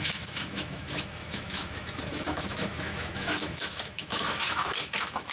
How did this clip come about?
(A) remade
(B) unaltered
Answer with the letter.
A